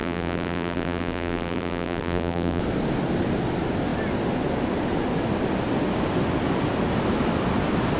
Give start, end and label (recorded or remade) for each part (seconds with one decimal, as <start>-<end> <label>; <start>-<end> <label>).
0.0-2.6 remade; 2.6-8.0 recorded